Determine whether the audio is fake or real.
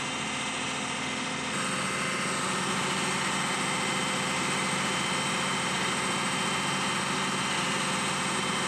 real